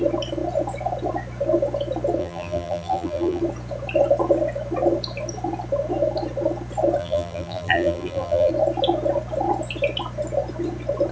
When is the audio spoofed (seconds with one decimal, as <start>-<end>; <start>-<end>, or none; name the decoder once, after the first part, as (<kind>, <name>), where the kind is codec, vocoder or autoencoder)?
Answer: 2.2-3.4 (vocoder, BigVGAN v2); 7.0-8.5